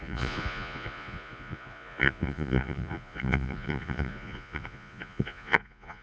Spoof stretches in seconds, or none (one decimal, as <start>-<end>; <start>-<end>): 0.0-6.0